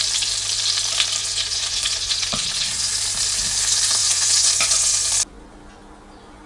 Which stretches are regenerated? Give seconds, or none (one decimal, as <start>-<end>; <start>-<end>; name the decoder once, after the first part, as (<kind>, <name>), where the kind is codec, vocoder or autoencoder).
1.2-2.9 (vocoder, Vocos); 4.0-5.1